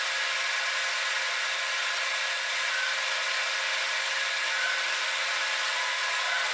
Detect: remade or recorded recorded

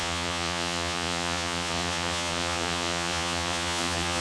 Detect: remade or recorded remade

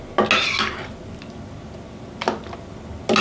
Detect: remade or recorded recorded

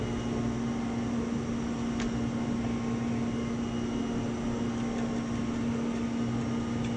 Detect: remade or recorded recorded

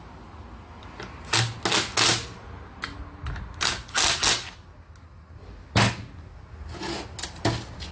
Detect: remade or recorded recorded